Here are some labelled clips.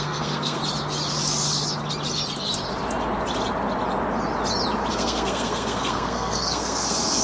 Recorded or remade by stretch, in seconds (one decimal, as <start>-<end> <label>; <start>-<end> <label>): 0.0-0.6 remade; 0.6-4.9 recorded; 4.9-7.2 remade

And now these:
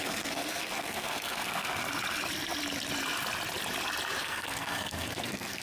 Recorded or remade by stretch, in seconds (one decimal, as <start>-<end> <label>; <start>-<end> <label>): 0.0-1.8 remade; 1.8-4.2 recorded; 4.2-5.6 remade

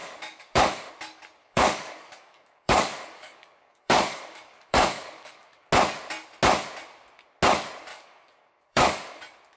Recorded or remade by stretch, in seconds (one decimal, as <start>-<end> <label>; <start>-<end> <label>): 0.0-0.9 remade; 0.9-1.4 recorded; 1.4-5.7 remade; 5.7-7.9 recorded; 7.9-9.2 remade; 9.2-9.6 recorded

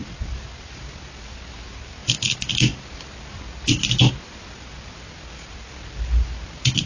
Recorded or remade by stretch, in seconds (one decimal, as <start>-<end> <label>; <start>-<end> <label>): 0.0-6.9 recorded

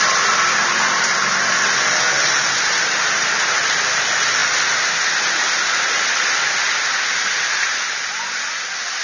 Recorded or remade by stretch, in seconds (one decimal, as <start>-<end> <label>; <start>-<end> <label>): 0.0-9.0 recorded

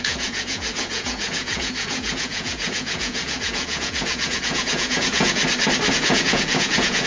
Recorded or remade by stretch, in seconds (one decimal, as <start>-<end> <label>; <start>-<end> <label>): 0.0-5.4 remade; 5.4-5.9 recorded; 5.9-7.1 remade

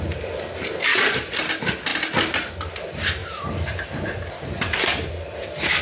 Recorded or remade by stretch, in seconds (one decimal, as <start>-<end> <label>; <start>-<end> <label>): 0.0-0.9 recorded; 0.9-1.5 remade; 1.5-1.9 recorded; 1.9-2.5 remade; 2.5-3.2 recorded; 3.2-5.1 remade; 5.1-5.8 recorded

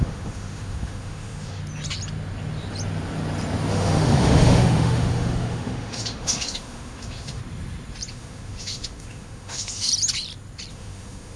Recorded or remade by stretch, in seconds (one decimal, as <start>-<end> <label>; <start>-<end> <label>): 0.0-1.6 remade; 1.6-3.7 recorded; 3.7-7.4 remade; 7.4-8.1 recorded; 8.1-9.9 remade; 9.9-10.7 recorded; 10.7-11.4 remade